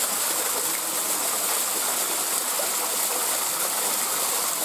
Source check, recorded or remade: recorded